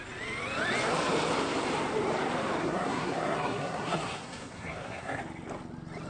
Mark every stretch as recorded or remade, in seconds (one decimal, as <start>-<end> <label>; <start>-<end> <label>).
0.0-2.6 recorded; 2.6-5.2 remade; 5.2-6.1 recorded